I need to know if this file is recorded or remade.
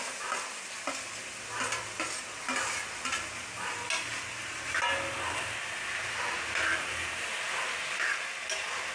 recorded